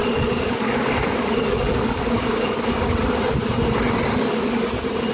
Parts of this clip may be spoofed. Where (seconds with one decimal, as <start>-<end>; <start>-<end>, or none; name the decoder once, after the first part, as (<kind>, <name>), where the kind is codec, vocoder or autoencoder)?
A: 0.0-2.7 (codec, DAC)